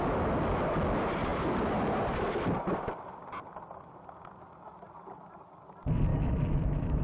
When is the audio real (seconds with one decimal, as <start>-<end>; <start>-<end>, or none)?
0.0-6.1